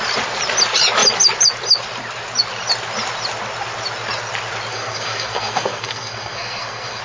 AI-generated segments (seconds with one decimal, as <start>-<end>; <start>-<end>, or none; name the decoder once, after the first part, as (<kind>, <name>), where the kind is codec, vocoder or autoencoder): 4.7-7.0 (codec, SNAC)